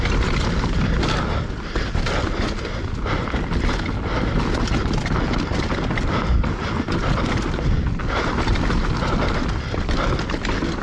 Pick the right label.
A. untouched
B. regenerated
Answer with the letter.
A